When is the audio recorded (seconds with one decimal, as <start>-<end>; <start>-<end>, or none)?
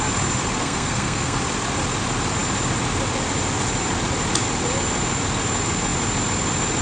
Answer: 0.0-0.6; 1.4-6.8